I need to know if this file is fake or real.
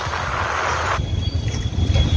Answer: real